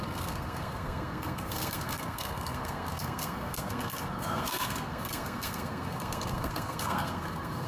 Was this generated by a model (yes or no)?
yes